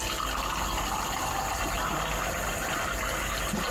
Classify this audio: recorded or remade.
recorded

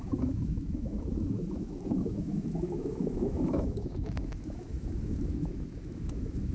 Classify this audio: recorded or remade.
remade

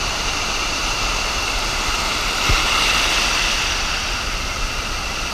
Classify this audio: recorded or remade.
remade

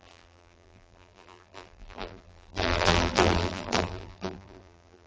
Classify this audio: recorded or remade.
remade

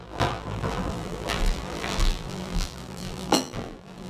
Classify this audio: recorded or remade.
remade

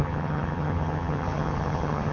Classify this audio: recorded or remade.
remade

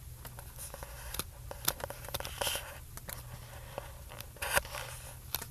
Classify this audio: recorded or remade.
recorded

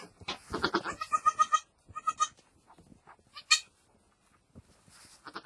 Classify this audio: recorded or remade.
recorded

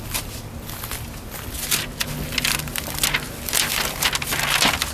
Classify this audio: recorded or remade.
recorded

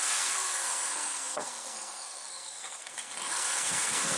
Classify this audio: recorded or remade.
remade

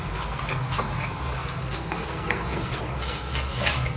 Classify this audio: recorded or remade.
remade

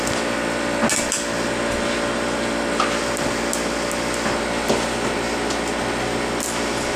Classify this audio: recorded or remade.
recorded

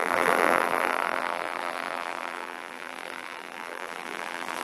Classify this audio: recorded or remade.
remade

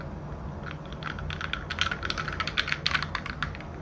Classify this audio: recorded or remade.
recorded